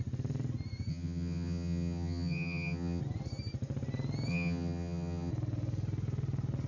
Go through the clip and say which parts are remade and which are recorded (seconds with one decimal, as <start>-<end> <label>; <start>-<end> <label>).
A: 0.0-0.9 recorded; 0.9-3.0 remade; 3.0-4.3 recorded; 4.3-5.3 remade; 5.3-6.7 recorded